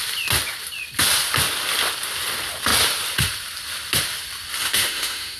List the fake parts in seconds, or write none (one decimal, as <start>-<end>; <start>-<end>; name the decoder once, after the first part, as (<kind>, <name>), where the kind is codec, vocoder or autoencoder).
4.6-5.4 (autoencoder, DAC-VAE)